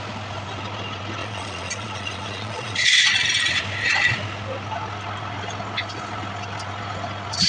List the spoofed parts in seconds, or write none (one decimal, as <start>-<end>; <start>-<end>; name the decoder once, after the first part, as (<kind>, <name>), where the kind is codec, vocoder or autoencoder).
1.2-3.1 (vocoder, Vocos)